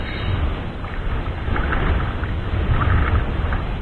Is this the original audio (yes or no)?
yes